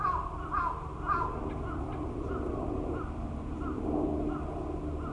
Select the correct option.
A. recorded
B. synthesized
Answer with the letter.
A